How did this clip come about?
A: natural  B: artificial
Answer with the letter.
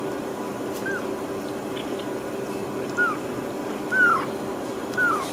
A